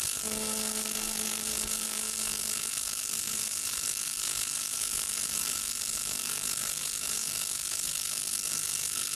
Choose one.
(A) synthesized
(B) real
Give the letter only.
A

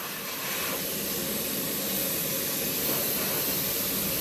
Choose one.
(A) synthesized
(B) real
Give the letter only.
B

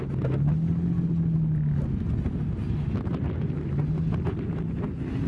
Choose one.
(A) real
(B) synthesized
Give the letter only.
A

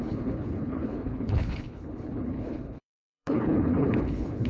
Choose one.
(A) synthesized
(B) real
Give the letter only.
A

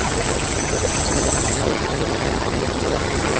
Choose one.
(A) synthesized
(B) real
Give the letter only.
A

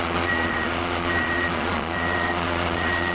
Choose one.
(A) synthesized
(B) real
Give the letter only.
A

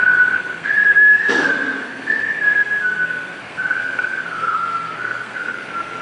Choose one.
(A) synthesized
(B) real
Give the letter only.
A